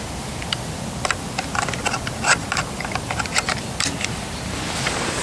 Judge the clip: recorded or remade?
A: recorded